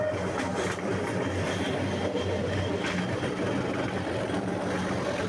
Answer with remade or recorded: recorded